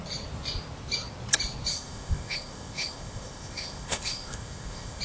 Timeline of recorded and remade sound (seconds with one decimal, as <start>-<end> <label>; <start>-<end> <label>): 0.0-1.7 recorded; 1.7-5.0 remade